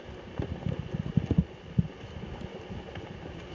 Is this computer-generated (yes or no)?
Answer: no